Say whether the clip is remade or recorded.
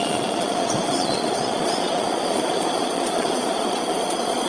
remade